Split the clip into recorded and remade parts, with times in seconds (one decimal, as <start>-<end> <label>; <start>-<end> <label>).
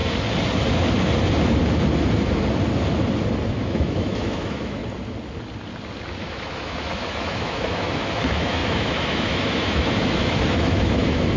0.0-3.5 recorded; 3.5-4.8 remade; 4.8-6.2 recorded; 6.2-11.4 remade